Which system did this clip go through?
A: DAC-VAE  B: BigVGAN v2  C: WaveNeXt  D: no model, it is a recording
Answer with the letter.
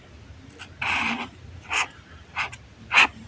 B